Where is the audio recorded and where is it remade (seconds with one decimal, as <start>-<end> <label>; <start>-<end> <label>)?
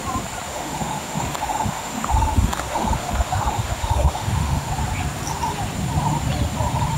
0.0-0.5 recorded; 0.5-4.7 remade; 4.7-7.0 recorded